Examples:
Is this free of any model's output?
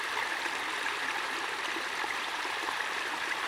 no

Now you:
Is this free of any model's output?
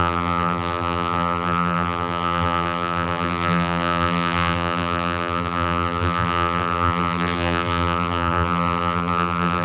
no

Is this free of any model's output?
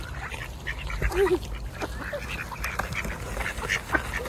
yes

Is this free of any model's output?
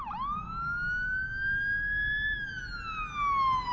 yes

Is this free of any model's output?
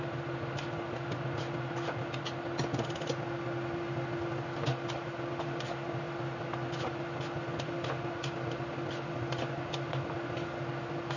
yes